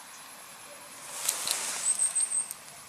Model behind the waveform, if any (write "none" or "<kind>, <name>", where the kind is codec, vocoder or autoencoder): none